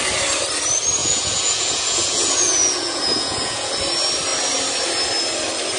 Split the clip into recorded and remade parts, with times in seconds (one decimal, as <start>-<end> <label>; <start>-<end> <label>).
0.0-1.0 recorded; 1.0-3.7 remade; 3.7-5.8 recorded